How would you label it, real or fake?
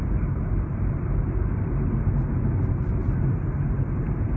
real